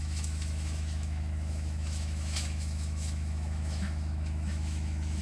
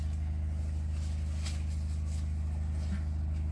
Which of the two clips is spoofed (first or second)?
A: first